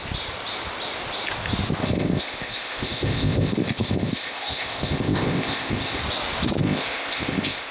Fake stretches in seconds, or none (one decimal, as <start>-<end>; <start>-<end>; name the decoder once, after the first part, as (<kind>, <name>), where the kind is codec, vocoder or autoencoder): 1.8-6.0 (codec, ZipCodec); 6.6-7.7